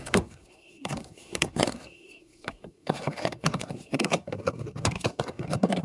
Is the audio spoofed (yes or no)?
yes